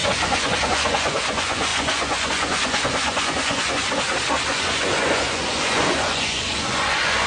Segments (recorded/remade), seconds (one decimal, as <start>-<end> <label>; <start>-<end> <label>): 0.0-3.9 remade; 3.9-4.5 recorded; 4.5-7.3 remade